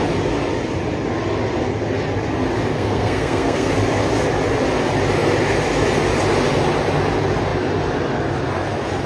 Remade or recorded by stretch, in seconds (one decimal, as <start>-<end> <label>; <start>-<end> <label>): 0.0-2.7 recorded; 2.7-3.7 remade; 3.7-9.1 recorded